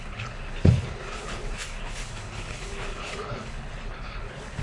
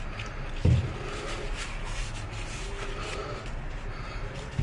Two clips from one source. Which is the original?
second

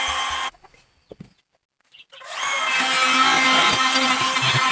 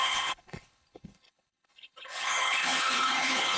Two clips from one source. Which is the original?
first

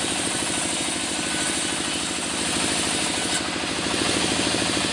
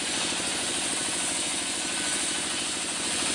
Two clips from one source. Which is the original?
first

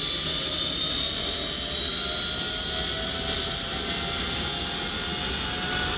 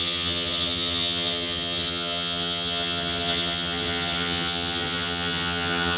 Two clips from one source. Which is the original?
first